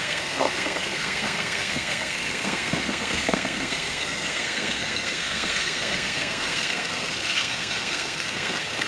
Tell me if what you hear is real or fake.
fake